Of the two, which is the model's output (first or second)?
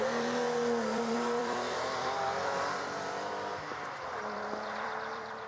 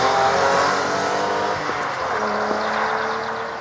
first